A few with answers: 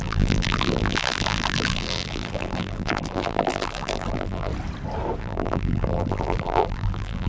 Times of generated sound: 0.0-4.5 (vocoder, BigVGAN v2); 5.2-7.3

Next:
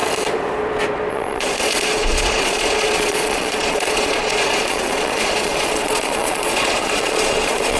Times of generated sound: 1.1-7.8 (vocoder, Vocos)

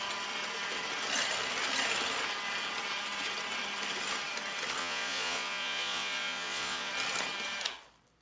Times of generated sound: 4.8-6.9 (vocoder, Vocos)

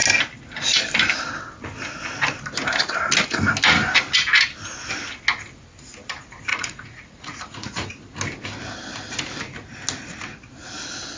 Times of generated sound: 6.5-8.0 (vocoder, Vocos)

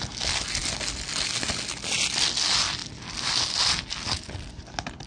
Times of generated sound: none